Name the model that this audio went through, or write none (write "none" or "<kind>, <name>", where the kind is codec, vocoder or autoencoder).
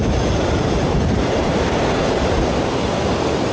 vocoder, BigVGAN v2